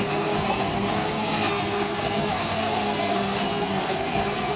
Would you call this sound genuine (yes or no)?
no